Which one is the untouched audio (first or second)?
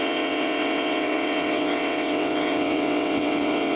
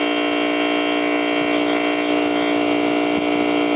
second